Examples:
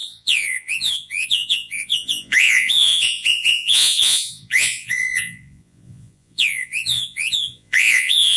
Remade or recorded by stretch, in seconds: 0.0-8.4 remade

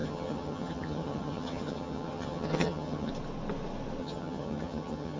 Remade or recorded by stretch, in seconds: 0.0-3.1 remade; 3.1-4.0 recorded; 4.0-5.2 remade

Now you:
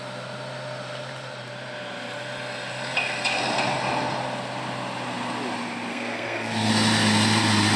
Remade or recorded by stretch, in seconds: 0.0-5.9 recorded; 5.9-6.7 remade; 6.7-7.8 recorded

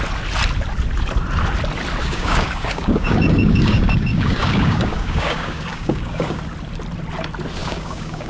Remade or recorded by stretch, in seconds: 0.0-2.0 recorded; 2.0-6.4 remade; 6.4-7.6 recorded; 7.6-8.3 remade

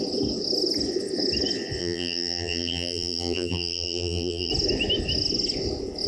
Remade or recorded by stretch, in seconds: 0.0-1.8 recorded; 1.8-4.5 remade; 4.5-6.1 recorded

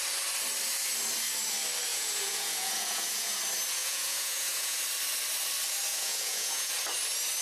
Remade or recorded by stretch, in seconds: 0.0-1.9 recorded; 1.9-3.4 remade; 3.4-3.8 recorded; 3.8-4.8 remade; 4.8-5.9 recorded; 5.9-6.7 remade; 6.7-7.4 recorded

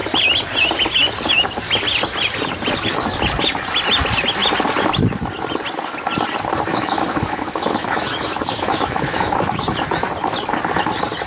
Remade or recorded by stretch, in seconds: 0.0-6.7 recorded; 6.7-9.6 remade; 9.6-11.3 recorded

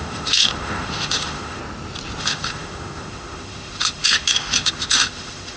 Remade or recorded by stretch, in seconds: 0.0-1.6 remade; 1.6-2.2 recorded; 2.2-5.6 remade